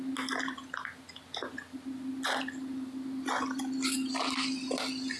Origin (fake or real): real